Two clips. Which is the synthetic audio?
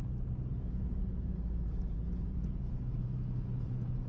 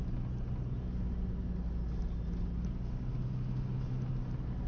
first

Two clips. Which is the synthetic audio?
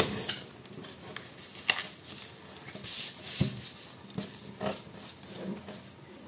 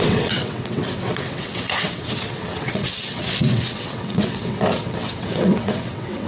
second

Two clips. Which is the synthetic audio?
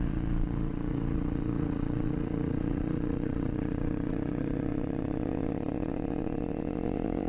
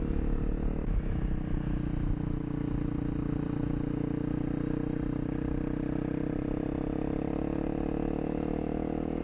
first